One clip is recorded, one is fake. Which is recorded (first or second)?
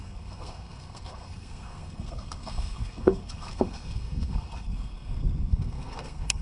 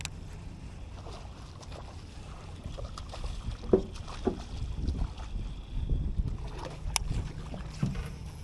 second